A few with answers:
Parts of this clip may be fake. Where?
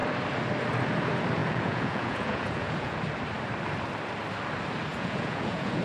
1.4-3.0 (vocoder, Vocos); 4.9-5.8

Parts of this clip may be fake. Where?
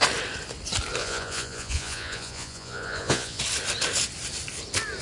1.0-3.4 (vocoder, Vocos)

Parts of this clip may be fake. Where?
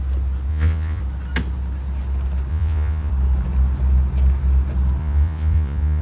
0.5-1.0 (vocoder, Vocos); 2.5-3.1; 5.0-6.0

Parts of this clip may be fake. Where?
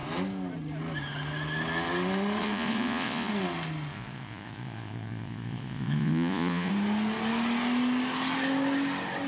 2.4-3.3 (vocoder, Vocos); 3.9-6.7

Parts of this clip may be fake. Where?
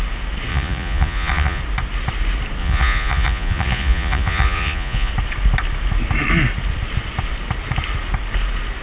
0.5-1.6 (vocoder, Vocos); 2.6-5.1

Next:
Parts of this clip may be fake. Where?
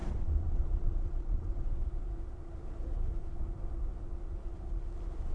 0.0-1.7 (vocoder, Vocos)